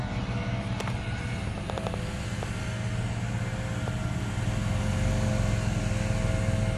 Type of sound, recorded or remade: recorded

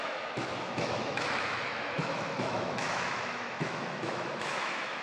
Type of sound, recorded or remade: remade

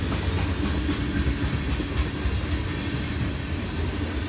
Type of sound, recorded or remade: recorded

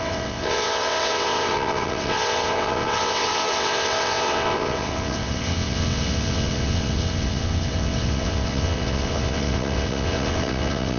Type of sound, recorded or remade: remade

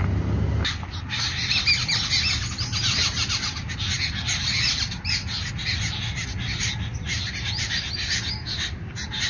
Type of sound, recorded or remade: recorded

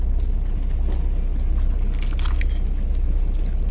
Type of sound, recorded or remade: recorded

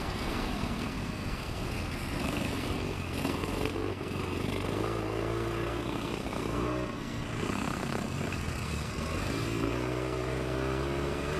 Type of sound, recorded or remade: remade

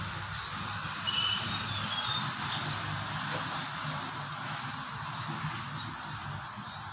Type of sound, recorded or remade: recorded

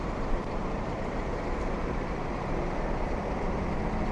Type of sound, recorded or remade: remade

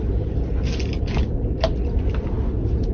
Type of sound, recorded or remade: recorded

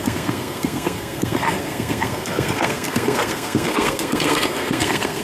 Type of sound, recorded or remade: remade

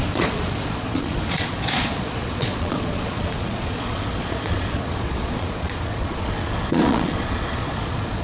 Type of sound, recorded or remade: remade